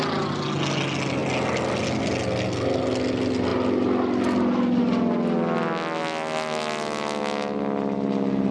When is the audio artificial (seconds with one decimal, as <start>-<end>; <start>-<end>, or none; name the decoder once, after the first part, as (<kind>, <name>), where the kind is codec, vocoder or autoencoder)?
none